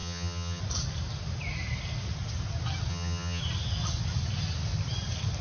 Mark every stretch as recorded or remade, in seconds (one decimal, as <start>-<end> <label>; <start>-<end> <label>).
0.0-0.6 remade; 0.6-2.9 recorded; 2.9-3.4 remade; 3.4-5.4 recorded